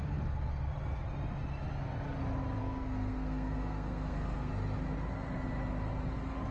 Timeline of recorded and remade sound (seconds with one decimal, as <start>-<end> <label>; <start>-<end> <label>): 0.0-2.6 recorded; 2.6-4.5 remade; 4.5-6.5 recorded